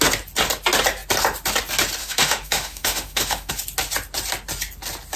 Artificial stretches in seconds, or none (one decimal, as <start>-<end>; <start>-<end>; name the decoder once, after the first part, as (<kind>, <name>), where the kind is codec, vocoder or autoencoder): 2.0-3.5 (autoencoder, DAC-VAE)